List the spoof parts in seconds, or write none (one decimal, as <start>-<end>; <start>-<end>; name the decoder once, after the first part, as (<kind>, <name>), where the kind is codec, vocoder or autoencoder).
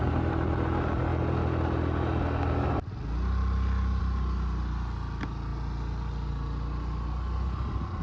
none